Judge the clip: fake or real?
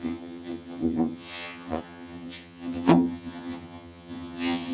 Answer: fake